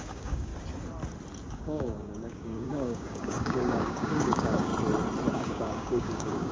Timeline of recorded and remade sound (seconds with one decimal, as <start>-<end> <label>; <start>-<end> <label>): 0.0-0.5 remade; 0.5-1.5 recorded; 1.5-4.7 remade; 4.7-5.3 recorded; 5.3-6.5 remade

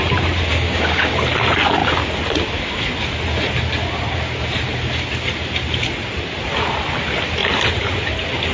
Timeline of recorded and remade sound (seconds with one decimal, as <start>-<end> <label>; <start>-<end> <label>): 0.0-0.5 recorded; 0.5-1.1 remade; 1.1-8.5 recorded

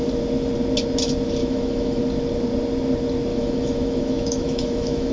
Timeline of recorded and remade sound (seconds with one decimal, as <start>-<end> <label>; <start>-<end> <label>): 0.0-1.4 recorded; 1.4-2.0 remade; 2.0-3.3 recorded; 3.3-5.1 remade

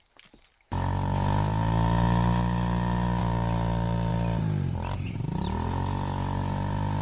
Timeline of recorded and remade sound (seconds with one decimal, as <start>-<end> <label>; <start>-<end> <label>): 0.0-7.0 recorded

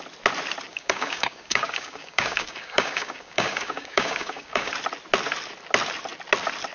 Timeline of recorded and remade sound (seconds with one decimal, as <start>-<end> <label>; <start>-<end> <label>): 0.0-0.7 recorded; 0.7-4.7 remade; 4.7-6.7 recorded

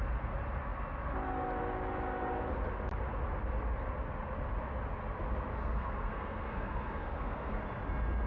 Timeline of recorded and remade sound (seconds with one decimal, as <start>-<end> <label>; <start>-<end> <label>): 0.0-5.6 recorded; 5.6-7.6 remade; 7.6-8.3 recorded

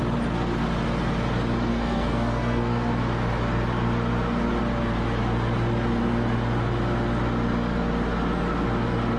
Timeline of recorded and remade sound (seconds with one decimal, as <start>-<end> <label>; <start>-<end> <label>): 0.0-1.7 recorded; 1.7-2.9 remade; 2.9-9.2 recorded